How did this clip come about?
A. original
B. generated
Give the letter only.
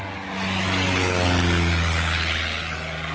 A